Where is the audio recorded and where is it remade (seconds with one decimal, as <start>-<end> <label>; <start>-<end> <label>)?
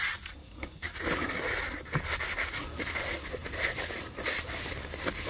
0.0-0.4 recorded; 0.4-1.3 remade; 1.3-5.3 recorded